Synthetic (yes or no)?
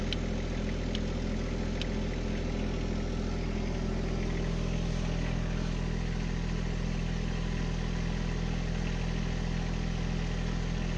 no